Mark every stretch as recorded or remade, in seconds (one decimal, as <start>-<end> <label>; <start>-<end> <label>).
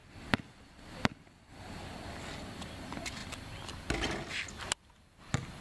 0.0-5.6 recorded